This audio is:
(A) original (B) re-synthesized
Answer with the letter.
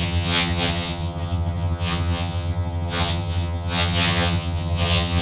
B